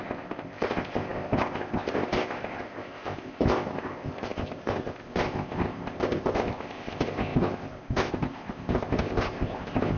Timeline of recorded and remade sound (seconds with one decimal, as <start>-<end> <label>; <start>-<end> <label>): 0.0-10.0 remade